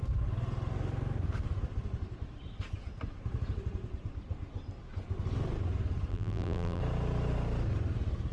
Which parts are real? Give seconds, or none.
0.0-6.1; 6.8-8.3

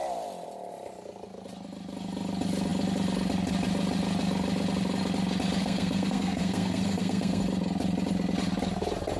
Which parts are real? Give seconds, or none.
0.0-5.6; 7.4-9.2

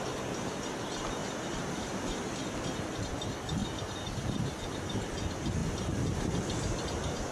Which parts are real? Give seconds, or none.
0.0-3.6; 4.7-5.6; 6.8-7.3

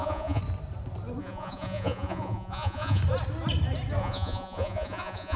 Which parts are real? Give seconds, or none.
0.4-1.2; 3.0-4.0

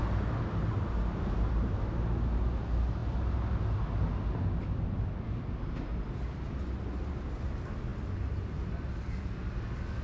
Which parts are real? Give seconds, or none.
0.0-10.0

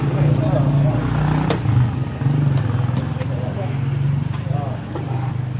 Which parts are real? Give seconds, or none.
0.0-5.6

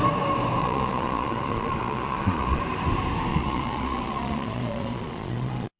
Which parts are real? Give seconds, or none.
0.0-0.6; 2.6-3.3